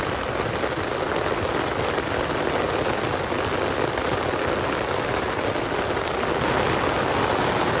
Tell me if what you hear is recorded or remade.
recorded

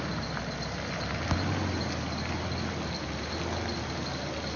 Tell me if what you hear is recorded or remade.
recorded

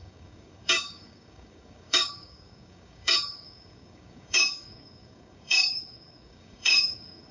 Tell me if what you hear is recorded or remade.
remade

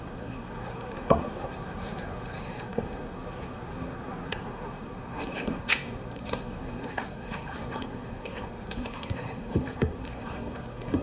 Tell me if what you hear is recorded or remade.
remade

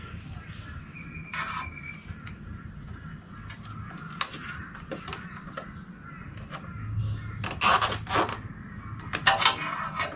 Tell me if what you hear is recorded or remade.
recorded